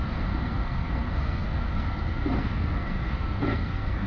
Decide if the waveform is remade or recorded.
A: remade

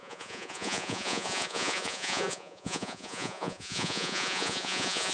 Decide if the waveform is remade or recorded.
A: remade